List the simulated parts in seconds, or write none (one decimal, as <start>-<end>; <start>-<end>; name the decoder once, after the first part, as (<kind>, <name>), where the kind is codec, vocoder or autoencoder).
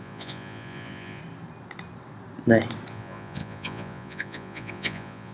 0.0-1.2 (vocoder, Vocos); 2.9-5.3